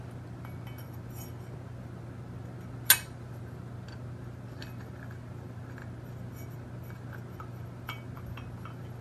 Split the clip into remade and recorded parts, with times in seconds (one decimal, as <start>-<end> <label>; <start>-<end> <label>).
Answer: 0.0-9.0 recorded